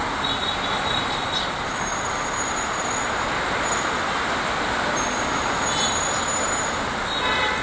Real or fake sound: real